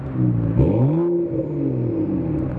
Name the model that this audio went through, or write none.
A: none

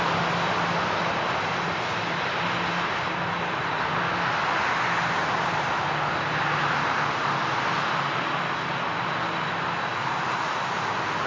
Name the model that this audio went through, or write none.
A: none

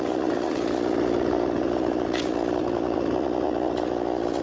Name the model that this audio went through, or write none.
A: vocoder, Vocos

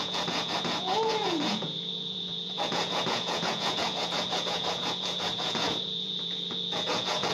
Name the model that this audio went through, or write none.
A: vocoder, Vocos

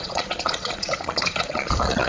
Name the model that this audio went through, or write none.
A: vocoder, Vocos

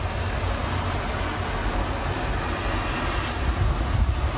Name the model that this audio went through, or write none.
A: none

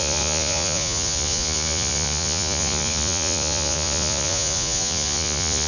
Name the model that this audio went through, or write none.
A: vocoder, Vocos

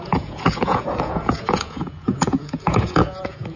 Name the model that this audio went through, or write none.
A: vocoder, Vocos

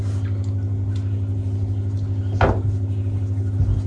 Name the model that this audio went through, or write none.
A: none